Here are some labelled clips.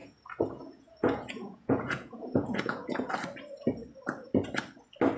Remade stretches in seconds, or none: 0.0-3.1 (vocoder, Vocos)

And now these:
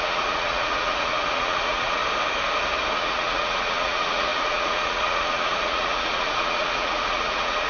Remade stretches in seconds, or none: 0.0-2.0 (vocoder, Vocos); 2.9-7.7

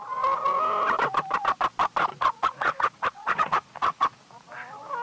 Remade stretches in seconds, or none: 2.1-4.5 (vocoder, Vocos)